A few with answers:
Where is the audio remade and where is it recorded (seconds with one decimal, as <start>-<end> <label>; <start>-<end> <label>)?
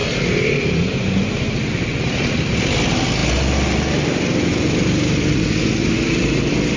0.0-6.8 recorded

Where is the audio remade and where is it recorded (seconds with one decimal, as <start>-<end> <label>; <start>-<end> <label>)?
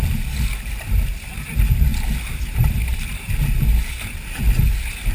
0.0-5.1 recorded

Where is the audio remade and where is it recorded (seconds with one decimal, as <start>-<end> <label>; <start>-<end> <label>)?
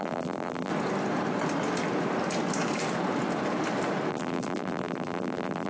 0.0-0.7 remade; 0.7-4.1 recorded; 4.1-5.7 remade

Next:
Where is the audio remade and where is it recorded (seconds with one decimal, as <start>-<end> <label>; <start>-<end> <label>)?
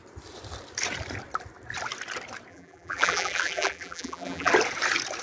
0.0-2.5 recorded; 2.5-4.5 remade; 4.5-5.2 recorded